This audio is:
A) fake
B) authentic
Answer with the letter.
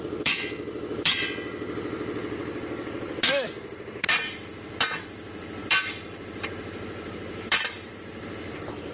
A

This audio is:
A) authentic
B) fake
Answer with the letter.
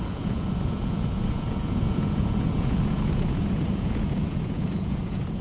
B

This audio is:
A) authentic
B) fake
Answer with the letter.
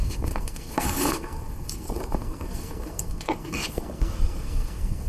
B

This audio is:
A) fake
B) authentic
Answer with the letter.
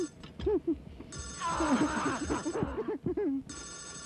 B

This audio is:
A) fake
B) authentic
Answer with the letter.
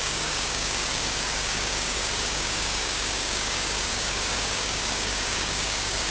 A